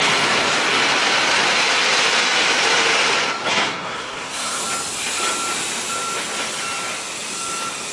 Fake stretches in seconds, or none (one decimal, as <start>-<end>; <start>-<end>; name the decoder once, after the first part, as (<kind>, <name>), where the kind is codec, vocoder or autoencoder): 3.5-4.6 (codec, SNAC)